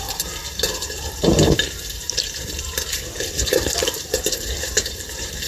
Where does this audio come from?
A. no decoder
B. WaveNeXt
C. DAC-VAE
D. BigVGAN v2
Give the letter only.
D